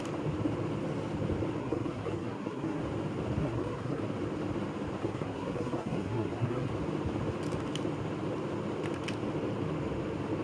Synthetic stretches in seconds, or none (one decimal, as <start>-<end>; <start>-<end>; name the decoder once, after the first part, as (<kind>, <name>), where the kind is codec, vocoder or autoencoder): 1.6-2.8 (codec, SNAC); 3.4-4.0; 5.0-6.7